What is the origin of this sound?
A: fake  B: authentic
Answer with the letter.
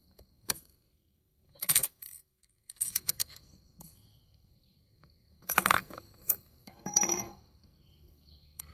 A